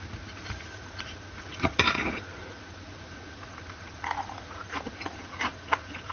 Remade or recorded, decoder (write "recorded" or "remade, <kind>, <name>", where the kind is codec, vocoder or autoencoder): remade, vocoder, Vocos